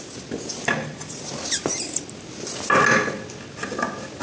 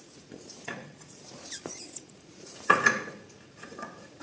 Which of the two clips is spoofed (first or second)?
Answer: second